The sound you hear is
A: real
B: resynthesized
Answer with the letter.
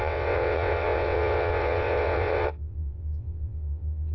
B